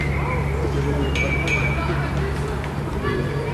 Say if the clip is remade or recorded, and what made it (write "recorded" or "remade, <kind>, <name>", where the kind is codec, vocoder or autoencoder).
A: recorded